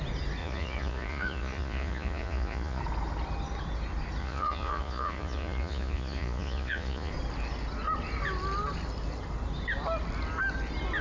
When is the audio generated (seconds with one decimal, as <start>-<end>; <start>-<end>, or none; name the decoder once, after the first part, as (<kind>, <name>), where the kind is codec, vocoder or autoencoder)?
0.4-2.8 (vocoder, Vocos); 4.2-7.1